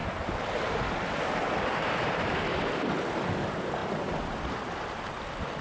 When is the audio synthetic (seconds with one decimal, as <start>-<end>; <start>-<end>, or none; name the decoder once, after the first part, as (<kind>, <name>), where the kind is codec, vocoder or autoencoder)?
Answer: 0.0-3.4 (vocoder, BigVGAN v2); 3.8-5.0